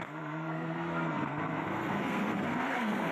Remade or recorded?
remade